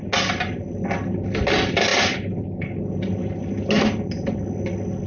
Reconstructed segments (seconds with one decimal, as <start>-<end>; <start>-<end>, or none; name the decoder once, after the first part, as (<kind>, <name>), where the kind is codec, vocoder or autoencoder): none